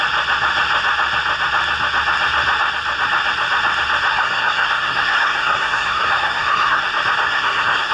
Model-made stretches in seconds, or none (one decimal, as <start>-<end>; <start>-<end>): 4.1-6.8; 7.2-7.9